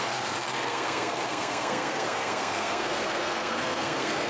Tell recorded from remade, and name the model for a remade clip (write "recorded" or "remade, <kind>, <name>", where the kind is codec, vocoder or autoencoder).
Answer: remade, codec, SNAC